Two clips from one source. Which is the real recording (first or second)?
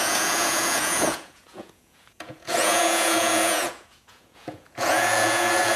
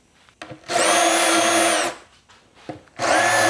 second